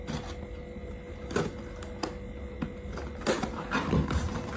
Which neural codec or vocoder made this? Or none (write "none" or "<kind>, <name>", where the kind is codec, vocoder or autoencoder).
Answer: none